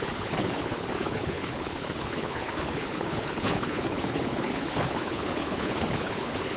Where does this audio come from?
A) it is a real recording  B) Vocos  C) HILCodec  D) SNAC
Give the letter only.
C